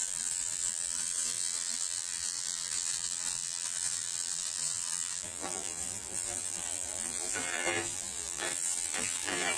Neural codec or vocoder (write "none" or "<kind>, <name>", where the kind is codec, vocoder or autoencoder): vocoder, BigVGAN v2